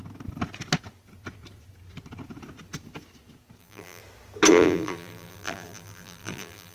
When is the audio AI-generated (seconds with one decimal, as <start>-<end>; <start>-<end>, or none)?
3.6-4.0; 4.5-6.7